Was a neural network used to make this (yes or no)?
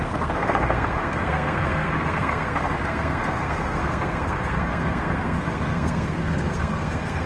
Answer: yes